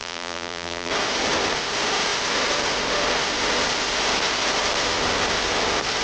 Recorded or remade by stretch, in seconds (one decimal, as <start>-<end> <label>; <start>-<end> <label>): 0.0-0.9 remade; 0.9-6.0 recorded